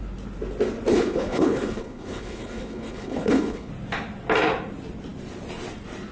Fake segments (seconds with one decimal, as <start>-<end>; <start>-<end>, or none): 0.9-3.7